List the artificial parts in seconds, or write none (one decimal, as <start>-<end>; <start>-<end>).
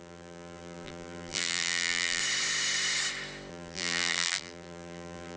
0.0-2.2; 3.5-5.4